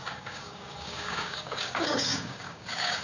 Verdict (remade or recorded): remade